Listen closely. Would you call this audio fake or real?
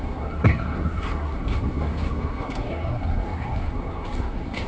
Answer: fake